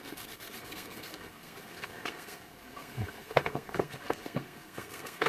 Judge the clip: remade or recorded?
remade